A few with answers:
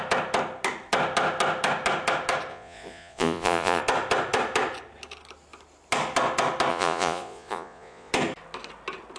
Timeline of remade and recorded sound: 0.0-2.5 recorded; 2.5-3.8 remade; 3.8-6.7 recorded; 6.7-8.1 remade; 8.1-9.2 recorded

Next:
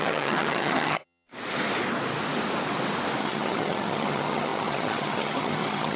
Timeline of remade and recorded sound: 0.0-1.3 remade; 1.3-3.2 recorded; 3.2-6.0 remade

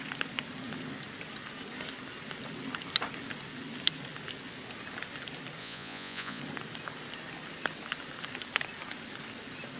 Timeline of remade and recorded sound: 0.0-5.6 recorded; 5.6-6.4 remade; 6.4-9.8 recorded

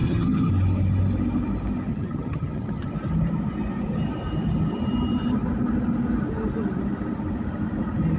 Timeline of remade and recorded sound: 0.0-0.5 remade; 0.5-1.9 recorded; 1.9-2.9 remade; 2.9-8.2 recorded